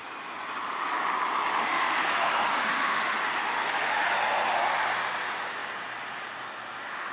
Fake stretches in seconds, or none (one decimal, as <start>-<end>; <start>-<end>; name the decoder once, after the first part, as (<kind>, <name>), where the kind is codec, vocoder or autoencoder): 1.6-4.1 (autoencoder, DAC-VAE)